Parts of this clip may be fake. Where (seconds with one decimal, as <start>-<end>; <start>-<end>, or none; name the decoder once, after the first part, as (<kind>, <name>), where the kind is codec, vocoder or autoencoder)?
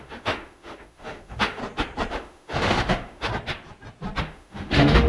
0.0-1.6 (autoencoder, DAC-VAE); 2.1-3.3; 4.2-5.1